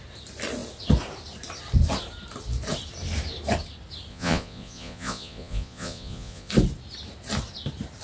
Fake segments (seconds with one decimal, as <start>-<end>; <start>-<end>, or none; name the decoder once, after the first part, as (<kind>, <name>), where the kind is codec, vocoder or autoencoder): 4.1-6.5 (vocoder, Vocos)

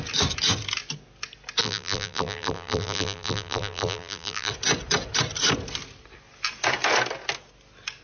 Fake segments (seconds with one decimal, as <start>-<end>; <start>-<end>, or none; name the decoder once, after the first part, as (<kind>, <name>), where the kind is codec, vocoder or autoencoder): 1.6-4.5 (vocoder, BigVGAN v2)